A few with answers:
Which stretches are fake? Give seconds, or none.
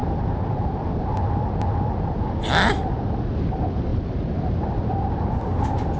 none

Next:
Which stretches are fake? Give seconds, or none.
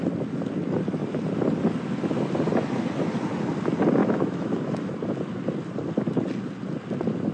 4.0-4.9 (autoencoder, DAC-VAE)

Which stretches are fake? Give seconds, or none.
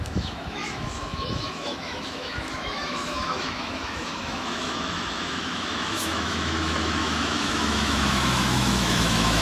0.0-9.4 (autoencoder, DAC-VAE)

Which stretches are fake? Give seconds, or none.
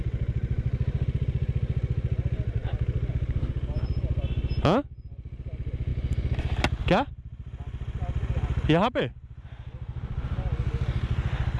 none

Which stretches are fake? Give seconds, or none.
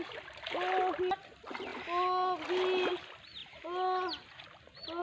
none